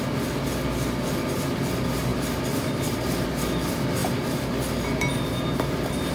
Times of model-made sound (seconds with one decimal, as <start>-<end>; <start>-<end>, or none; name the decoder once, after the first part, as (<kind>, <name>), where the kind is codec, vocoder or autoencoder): none